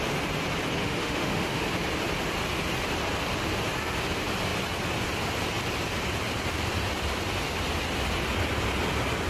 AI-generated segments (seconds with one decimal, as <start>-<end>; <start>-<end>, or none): 0.8-1.6